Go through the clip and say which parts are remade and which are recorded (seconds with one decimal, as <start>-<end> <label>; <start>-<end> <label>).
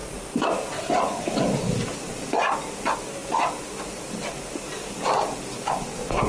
0.0-6.3 recorded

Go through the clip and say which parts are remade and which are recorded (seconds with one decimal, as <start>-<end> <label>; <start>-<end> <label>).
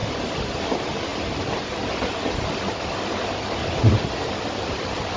0.0-5.2 recorded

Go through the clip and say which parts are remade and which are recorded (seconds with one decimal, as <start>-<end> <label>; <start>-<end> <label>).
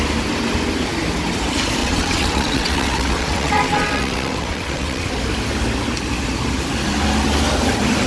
0.0-1.8 recorded; 1.8-5.1 remade; 5.1-8.1 recorded